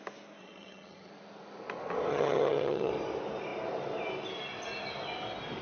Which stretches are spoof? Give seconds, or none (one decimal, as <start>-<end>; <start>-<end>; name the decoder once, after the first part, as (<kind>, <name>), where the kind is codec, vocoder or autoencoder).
0.4-1.1 (vocoder, HiFi-GAN); 2.1-2.9